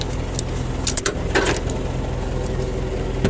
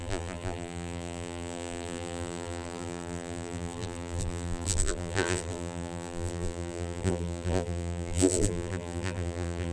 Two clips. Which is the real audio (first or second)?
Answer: first